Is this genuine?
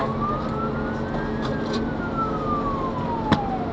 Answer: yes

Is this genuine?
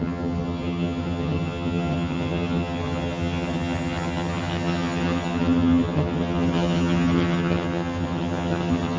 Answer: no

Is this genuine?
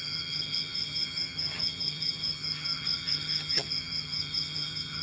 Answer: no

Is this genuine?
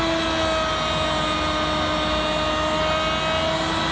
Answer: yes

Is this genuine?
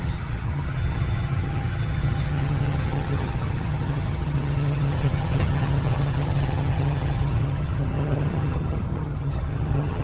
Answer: no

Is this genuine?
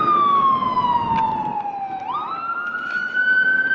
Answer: yes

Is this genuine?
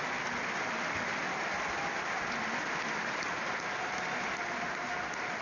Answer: yes